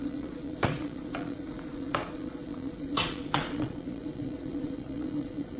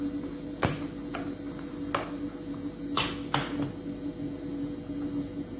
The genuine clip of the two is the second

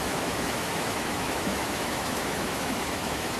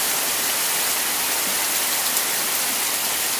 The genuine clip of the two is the second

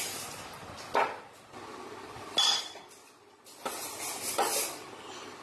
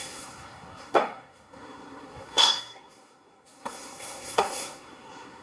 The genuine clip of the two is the first